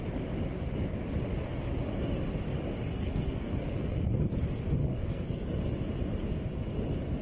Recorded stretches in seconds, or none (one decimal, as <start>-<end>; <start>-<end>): 0.0-2.9; 4.3-4.8; 5.4-7.2

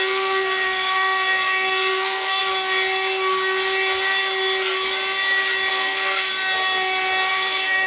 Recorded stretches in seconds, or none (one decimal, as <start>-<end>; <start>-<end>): 2.4-5.7; 6.3-7.3

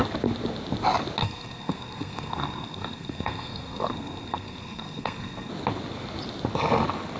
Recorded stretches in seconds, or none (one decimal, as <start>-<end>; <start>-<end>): 0.0-1.2; 5.5-7.2

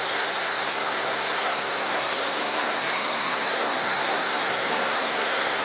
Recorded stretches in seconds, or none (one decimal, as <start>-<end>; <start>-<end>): none

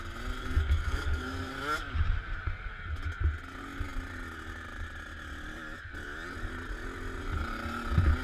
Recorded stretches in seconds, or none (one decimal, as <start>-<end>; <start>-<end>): 0.0-0.4; 1.5-8.2

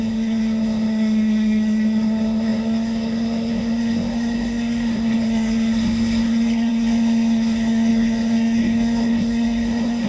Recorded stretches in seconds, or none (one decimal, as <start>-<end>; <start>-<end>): none

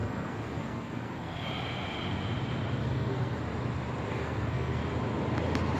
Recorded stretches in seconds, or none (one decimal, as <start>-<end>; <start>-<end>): 1.5-2.8; 3.4-4.1; 4.8-5.8

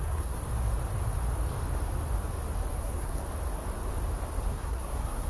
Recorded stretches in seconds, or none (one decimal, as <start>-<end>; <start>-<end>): 0.4-2.7; 3.2-4.5